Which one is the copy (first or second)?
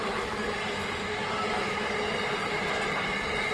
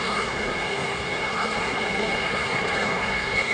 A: second